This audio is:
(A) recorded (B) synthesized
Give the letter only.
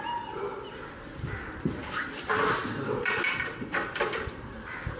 A